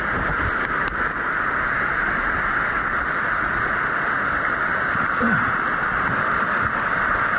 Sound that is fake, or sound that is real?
real